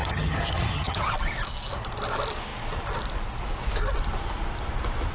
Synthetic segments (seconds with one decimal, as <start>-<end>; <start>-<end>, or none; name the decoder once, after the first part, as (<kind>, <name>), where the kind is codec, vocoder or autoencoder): 0.0-1.1 (vocoder, HiFi-GAN)